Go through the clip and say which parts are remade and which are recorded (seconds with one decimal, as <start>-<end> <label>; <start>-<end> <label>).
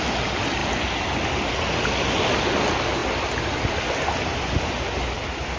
0.0-5.6 recorded